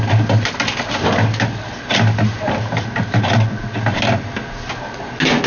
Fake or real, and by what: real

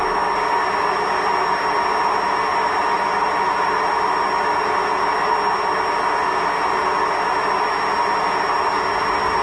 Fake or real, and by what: real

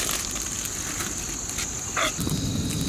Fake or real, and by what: real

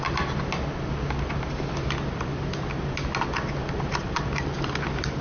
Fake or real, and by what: real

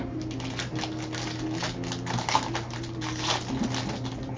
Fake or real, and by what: real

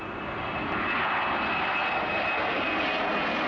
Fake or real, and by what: real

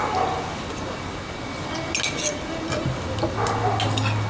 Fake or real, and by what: real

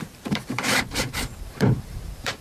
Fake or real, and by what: fake, vocoder, BigVGAN v2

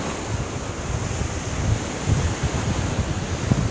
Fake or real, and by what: real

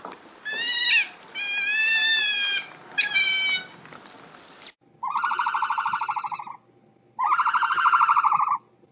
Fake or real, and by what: real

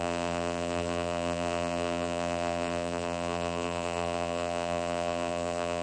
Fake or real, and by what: fake, vocoder, BigVGAN v2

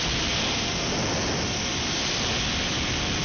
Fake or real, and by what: real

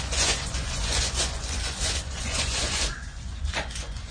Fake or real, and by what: fake, vocoder, Vocos